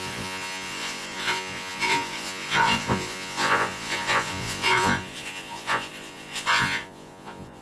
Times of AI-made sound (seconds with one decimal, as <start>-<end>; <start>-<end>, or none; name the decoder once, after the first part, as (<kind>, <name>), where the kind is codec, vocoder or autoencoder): 0.0-7.6 (vocoder, Vocos)